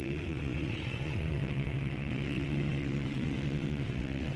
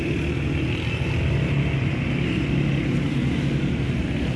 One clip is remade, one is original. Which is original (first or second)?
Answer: second